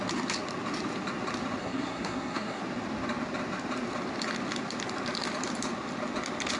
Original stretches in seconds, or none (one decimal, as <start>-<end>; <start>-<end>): 0.0-1.6; 2.6-6.6